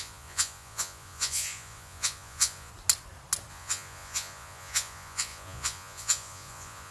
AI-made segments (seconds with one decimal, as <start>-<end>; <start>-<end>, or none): 0.0-2.7; 3.5-6.9